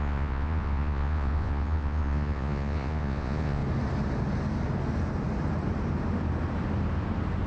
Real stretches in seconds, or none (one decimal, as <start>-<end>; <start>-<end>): 3.6-7.5